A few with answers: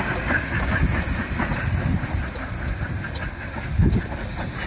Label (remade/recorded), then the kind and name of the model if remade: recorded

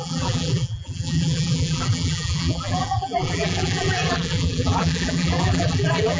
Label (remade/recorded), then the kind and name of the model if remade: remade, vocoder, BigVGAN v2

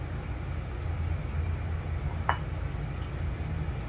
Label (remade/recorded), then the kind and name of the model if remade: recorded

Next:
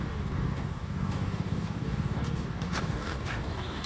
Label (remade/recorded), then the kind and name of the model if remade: remade, codec, DAC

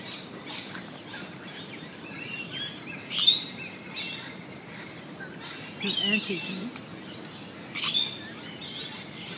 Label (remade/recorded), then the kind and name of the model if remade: recorded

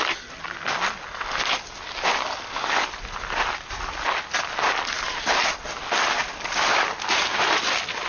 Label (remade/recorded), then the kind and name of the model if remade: recorded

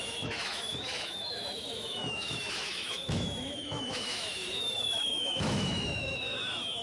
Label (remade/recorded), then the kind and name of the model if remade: remade, autoencoder, DAC-VAE